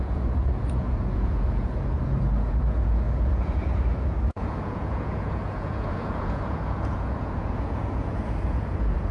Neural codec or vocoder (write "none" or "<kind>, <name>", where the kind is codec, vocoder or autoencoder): vocoder, Vocos